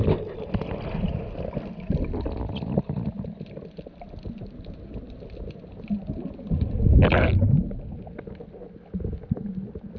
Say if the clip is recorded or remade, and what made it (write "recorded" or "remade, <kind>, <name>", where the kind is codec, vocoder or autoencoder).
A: recorded